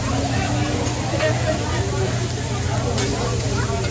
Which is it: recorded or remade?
recorded